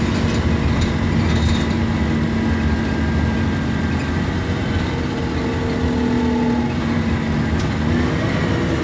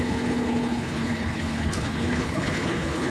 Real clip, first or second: first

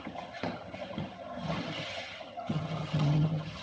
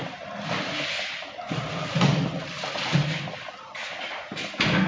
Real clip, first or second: second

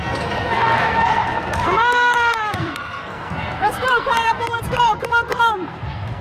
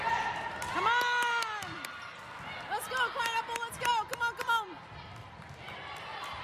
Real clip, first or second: second